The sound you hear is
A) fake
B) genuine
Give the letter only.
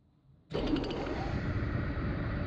A